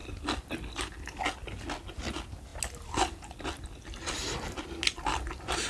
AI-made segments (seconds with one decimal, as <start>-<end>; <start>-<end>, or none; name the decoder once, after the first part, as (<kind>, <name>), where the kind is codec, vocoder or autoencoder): none